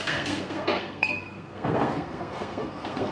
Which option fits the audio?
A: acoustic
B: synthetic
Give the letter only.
B